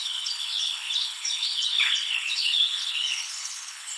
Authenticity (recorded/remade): remade